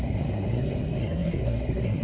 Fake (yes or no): yes